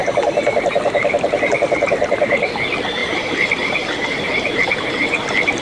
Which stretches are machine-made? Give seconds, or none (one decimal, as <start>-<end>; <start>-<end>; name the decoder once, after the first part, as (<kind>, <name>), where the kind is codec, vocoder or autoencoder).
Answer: 0.0-2.5 (vocoder, BigVGAN v2); 3.0-4.9

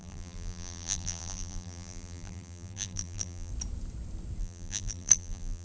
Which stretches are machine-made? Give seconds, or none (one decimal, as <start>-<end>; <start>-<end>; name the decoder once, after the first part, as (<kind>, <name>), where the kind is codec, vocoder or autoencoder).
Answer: 0.0-3.5 (vocoder, BigVGAN v2); 4.4-5.6

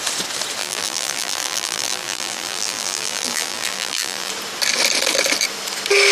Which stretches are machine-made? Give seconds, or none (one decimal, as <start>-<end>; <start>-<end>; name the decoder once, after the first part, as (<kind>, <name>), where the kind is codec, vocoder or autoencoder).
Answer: 0.6-4.3 (vocoder, BigVGAN v2)

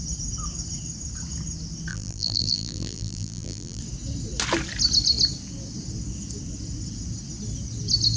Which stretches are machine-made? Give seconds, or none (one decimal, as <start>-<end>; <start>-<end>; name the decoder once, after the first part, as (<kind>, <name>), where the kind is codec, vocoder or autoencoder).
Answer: 1.9-3.8 (vocoder, BigVGAN v2)

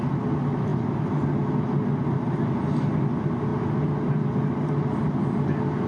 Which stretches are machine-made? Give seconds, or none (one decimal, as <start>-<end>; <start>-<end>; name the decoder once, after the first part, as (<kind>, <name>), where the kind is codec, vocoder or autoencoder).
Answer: none

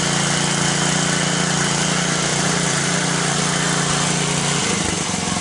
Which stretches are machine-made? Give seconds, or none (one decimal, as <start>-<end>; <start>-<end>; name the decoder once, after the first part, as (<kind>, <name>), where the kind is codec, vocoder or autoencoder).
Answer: 2.3-3.4 (vocoder, BigVGAN v2); 4.6-5.4

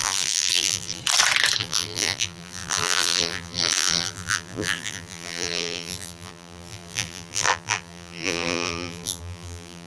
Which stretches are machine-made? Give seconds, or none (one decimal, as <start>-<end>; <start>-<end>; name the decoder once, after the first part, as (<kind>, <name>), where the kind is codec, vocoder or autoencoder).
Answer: 0.0-1.0 (vocoder, BigVGAN v2); 1.6-9.9